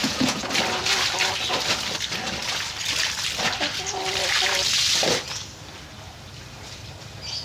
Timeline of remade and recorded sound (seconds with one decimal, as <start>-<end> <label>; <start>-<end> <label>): 0.0-0.5 remade; 0.5-7.4 recorded